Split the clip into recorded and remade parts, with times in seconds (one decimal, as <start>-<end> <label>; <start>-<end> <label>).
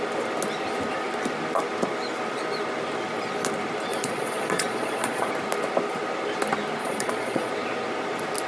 0.0-3.9 recorded; 3.9-5.3 remade; 5.3-6.8 recorded; 6.8-7.5 remade; 7.5-8.5 recorded